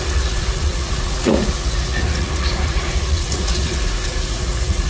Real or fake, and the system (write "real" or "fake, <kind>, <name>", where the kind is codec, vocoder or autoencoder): fake, vocoder, Vocos